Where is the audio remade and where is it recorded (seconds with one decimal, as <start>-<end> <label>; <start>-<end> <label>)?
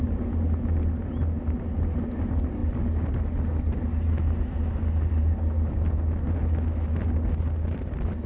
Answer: 0.0-8.3 recorded